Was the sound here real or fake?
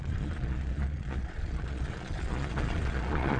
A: fake